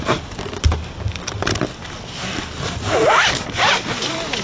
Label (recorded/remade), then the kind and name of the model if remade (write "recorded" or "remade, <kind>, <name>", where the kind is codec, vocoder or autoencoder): recorded